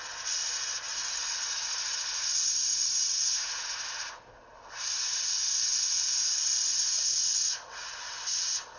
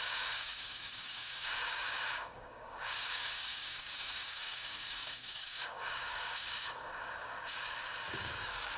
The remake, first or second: second